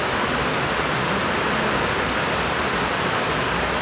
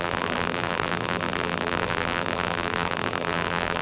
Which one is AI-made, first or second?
second